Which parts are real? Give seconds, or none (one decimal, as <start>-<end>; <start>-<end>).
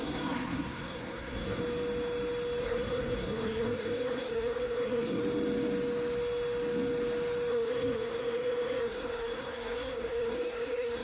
1.6-2.6; 5.2-7.5